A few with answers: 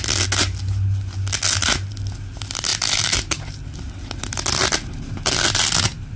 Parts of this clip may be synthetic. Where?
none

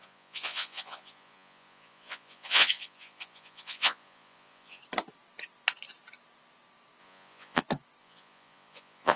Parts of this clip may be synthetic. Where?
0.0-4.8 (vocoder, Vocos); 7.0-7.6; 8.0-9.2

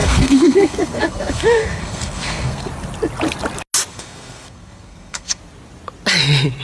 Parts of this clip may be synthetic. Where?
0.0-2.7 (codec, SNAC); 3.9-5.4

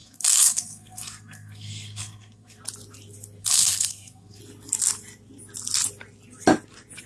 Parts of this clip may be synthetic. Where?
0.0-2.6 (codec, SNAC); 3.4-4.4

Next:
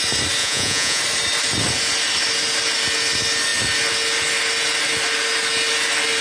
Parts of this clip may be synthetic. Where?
0.4-1.0 (vocoder, Vocos)

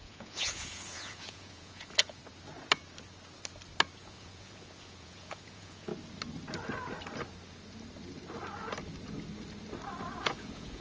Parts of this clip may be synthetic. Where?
0.0-2.2 (vocoder, Vocos); 4.0-5.9; 10.2-10.8

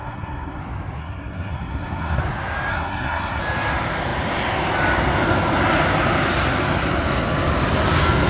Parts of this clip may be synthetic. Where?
0.0-0.6 (codec, SNAC); 1.0-2.2; 2.7-3.4